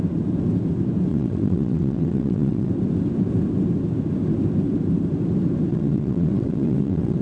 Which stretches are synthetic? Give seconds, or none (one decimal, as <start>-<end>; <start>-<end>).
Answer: 1.1-2.7; 5.7-7.2